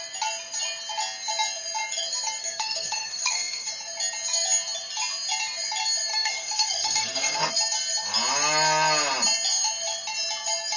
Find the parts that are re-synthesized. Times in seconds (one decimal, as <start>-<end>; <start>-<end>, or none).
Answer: 2.4-3.7; 6.1-7.5